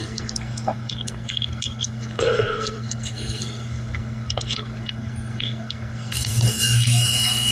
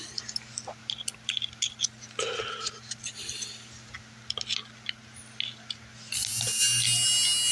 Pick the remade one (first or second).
first